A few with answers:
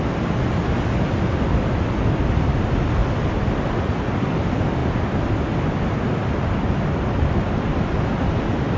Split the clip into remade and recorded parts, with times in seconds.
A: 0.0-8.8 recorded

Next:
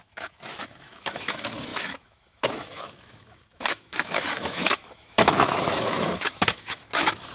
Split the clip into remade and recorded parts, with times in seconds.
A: 0.0-7.3 remade

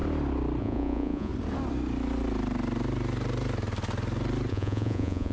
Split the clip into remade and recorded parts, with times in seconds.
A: 0.0-0.6 recorded; 0.6-1.3 remade; 1.3-4.5 recorded; 4.5-5.3 remade

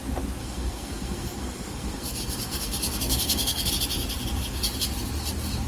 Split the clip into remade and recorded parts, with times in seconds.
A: 0.0-0.4 recorded; 0.4-3.7 remade; 3.7-5.7 recorded

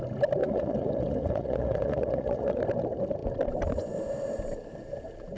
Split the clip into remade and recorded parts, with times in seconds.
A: 0.0-0.4 recorded; 0.4-2.6 remade; 2.6-5.4 recorded

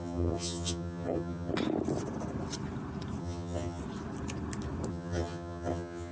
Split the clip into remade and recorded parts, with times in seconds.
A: 0.0-1.5 remade; 1.5-3.2 recorded; 3.2-3.8 remade; 3.8-4.9 recorded; 4.9-6.1 remade

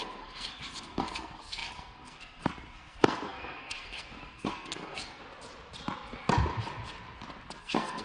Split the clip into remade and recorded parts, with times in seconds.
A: 0.0-5.2 remade; 5.2-7.6 recorded; 7.6-8.0 remade